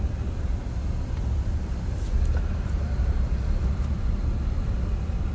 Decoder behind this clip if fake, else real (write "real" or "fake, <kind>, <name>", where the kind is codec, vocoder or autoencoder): real